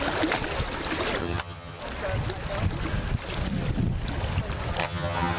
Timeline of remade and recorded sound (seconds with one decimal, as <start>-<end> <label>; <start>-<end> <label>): 0.0-1.2 recorded; 1.2-1.8 remade; 1.8-4.8 recorded; 4.8-5.4 remade